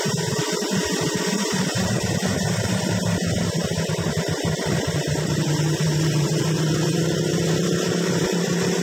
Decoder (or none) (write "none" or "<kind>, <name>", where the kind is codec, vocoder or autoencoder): vocoder, BigVGAN v2